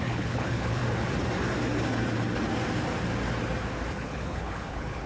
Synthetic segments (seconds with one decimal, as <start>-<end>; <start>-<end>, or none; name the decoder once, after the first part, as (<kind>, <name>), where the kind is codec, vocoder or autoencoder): 0.0-0.8 (codec, HILCodec); 3.9-5.1